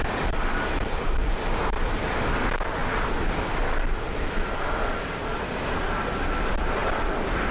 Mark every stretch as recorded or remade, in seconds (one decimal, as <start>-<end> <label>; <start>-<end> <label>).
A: 0.0-7.5 recorded